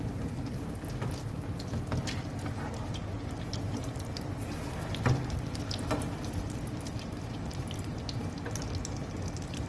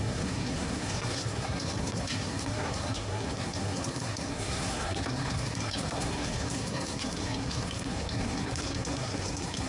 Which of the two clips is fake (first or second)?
second